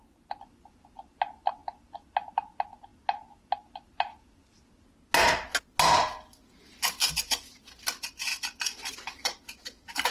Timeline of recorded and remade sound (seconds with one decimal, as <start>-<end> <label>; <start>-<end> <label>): 0.0-10.1 recorded